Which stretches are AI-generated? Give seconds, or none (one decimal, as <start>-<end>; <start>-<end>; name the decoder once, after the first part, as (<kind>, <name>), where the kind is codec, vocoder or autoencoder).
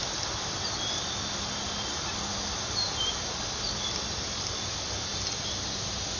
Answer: none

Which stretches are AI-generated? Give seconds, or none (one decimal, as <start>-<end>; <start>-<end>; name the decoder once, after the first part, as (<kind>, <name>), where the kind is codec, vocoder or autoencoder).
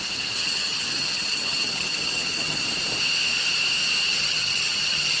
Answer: 0.4-2.6 (vocoder, HiFi-GAN); 4.1-5.2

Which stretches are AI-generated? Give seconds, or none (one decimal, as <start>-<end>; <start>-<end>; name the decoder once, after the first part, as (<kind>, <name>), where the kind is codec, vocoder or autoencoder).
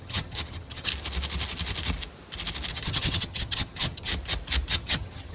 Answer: 0.0-0.9 (vocoder, HiFi-GAN); 2.7-4.1; 4.7-5.3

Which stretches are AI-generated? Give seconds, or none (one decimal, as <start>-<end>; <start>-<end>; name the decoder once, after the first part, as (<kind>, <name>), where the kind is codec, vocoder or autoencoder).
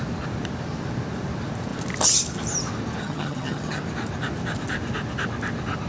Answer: 3.0-3.8 (vocoder, HiFi-GAN)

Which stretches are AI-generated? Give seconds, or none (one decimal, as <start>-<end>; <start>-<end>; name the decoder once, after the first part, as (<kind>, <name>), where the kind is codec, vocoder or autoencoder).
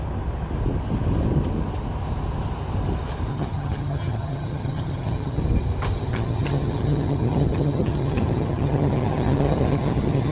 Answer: 3.3-5.4 (vocoder, HiFi-GAN); 6.1-10.3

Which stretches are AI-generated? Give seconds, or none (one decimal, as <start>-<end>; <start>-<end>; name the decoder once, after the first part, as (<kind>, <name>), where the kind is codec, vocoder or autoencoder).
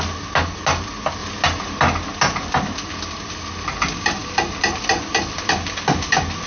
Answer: none